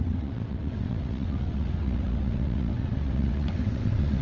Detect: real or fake fake